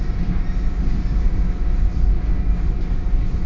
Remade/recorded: recorded